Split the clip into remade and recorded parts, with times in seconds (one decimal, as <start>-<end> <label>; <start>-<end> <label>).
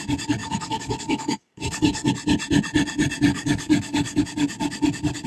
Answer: 0.0-0.4 recorded; 0.4-2.1 remade; 2.1-3.3 recorded; 3.3-4.2 remade; 4.2-5.3 recorded